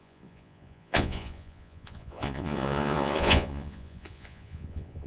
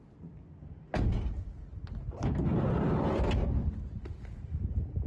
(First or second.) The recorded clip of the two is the second